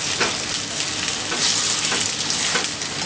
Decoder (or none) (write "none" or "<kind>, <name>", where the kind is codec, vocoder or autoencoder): none